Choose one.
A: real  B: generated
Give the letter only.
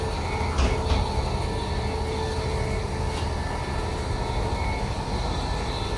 A